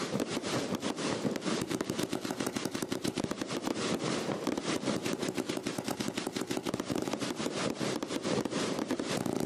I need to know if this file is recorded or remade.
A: remade